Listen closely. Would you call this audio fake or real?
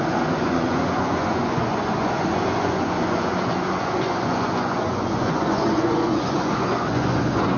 fake